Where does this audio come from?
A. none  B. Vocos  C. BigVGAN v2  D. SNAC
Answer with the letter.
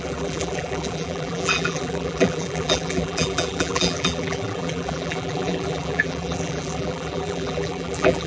C